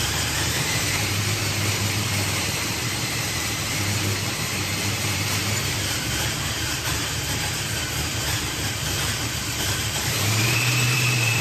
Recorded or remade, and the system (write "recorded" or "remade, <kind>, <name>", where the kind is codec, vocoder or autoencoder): remade, vocoder, BigVGAN v2